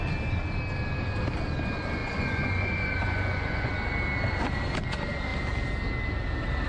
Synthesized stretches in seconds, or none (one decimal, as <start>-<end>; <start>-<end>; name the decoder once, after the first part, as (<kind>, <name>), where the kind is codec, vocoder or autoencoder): 2.0-3.7 (vocoder, Vocos)